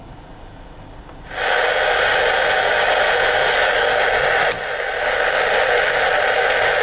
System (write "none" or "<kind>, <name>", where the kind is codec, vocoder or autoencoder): none